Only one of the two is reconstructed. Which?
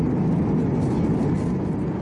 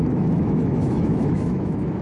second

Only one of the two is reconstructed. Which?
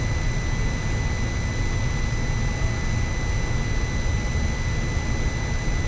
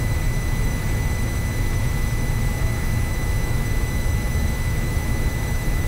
second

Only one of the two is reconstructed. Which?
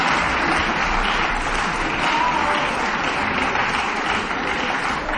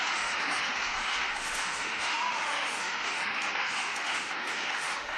second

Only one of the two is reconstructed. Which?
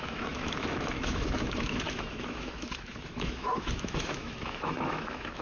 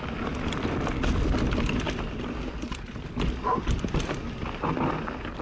first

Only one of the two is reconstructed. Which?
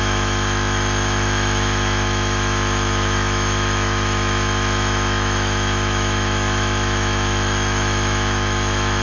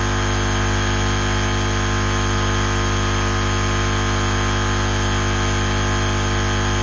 first